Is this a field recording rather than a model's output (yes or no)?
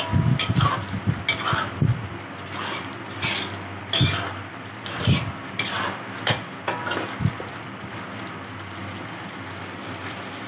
yes